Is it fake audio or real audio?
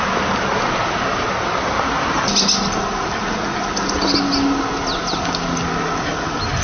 real